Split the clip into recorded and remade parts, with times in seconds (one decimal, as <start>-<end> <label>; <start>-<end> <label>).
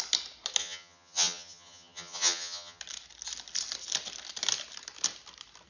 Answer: 0.0-0.6 recorded; 0.6-2.8 remade; 2.8-5.7 recorded